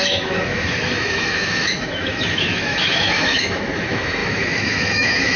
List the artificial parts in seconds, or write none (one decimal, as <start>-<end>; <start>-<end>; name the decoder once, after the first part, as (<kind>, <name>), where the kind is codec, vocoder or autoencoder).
0.0-5.4 (autoencoder, DAC-VAE)

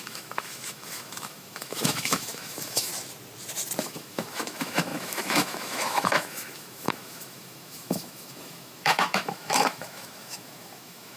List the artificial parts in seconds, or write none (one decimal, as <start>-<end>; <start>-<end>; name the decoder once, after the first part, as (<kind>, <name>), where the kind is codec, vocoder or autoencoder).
0.0-2.9 (autoencoder, DAC-VAE); 3.8-11.2

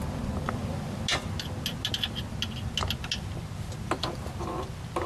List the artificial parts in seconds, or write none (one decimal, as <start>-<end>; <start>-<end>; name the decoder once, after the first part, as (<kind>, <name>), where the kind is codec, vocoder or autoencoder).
none

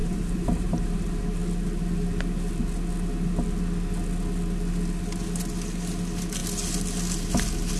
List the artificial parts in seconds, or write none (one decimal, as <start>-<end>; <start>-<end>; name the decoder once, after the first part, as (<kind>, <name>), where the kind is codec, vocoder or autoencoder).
0.0-1.2 (vocoder, BigVGAN v2)

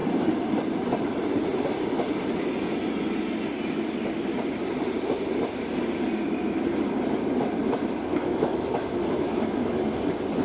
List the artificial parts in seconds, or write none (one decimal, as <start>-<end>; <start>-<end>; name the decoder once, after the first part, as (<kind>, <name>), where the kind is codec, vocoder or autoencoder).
8.1-10.0 (autoencoder, DAC-VAE)

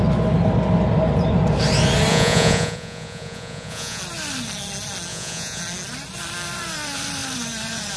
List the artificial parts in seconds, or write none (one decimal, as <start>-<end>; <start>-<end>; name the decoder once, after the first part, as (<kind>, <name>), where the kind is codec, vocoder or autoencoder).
2.1-4.0 (vocoder, Vocos); 5.1-5.6